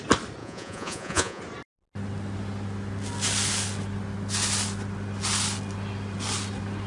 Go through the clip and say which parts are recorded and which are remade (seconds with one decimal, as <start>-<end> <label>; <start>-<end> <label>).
0.0-0.4 recorded; 0.4-1.4 remade; 1.4-6.9 recorded